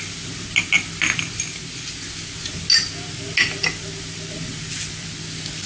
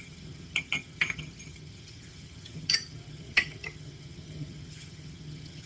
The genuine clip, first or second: first